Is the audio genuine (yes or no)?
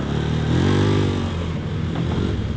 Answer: yes